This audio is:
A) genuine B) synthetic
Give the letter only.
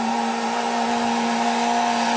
A